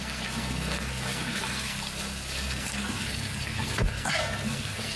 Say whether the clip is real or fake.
fake